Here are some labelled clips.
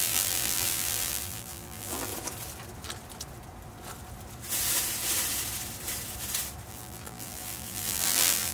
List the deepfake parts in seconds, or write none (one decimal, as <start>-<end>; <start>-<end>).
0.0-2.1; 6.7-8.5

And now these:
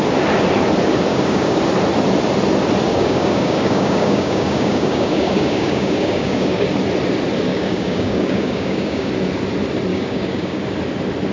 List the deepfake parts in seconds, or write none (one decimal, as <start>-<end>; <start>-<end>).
1.1-1.6; 2.9-6.7; 7.5-9.1; 9.9-10.6

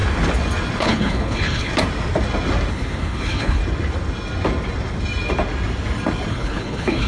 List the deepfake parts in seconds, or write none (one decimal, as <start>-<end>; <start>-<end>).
0.8-1.7; 2.7-3.6; 6.3-7.1